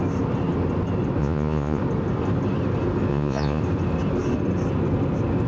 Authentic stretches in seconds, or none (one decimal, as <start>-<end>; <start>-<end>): 0.0-1.2; 1.8-3.1; 3.6-5.5